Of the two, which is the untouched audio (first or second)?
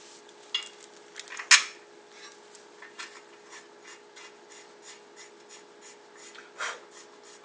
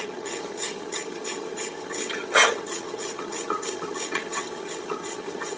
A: first